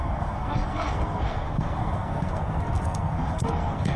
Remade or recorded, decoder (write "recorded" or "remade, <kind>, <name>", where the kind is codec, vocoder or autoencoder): remade, codec, SNAC